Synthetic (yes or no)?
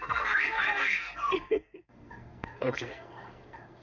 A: yes